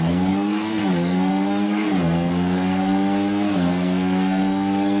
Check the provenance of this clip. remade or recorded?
remade